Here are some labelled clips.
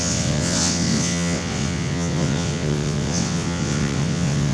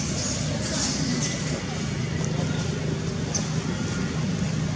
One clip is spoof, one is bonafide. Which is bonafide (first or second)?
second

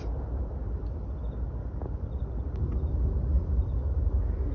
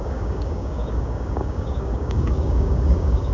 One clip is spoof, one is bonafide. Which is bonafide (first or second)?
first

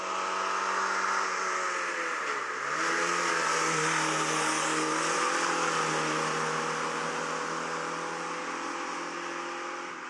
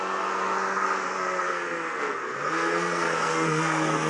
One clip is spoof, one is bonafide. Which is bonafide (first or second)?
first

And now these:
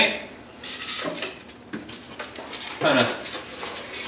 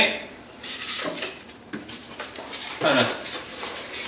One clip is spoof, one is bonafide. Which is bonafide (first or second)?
first